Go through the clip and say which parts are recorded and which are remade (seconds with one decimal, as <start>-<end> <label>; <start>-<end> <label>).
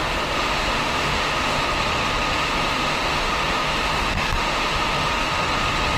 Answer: 0.0-1.7 remade; 1.7-2.4 recorded; 2.4-5.3 remade; 5.3-6.0 recorded